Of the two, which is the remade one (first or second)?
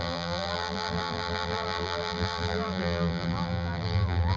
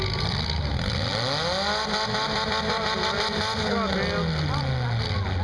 first